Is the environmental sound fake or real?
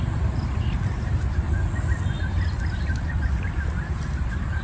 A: real